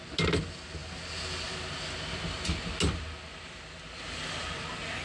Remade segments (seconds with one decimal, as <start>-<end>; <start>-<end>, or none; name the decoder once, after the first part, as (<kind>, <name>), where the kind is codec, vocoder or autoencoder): none